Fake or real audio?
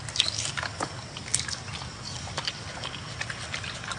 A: real